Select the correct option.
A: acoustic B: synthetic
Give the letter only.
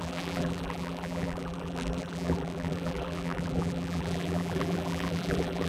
B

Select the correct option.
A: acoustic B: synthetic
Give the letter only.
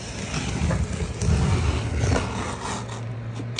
A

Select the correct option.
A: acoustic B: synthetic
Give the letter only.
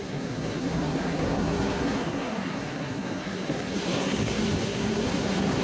B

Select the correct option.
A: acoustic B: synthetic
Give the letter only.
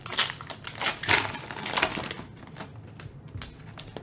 A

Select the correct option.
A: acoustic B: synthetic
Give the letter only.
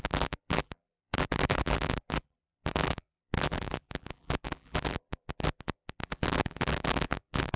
B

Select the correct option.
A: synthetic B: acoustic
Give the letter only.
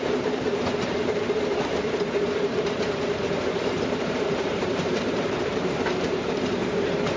A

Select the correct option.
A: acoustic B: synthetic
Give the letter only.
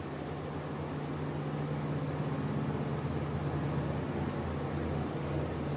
A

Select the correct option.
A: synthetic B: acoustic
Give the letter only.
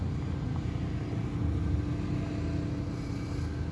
B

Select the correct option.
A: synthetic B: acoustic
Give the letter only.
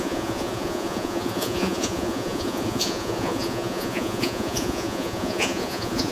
A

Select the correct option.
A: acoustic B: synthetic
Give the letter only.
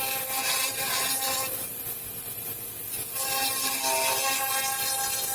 A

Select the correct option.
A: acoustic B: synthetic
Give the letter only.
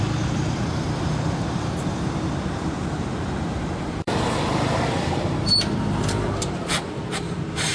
B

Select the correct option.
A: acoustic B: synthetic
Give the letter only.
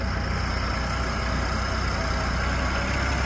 A